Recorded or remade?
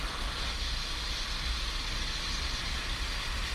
recorded